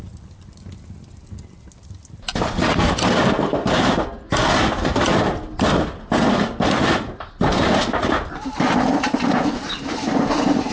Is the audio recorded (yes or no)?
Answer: yes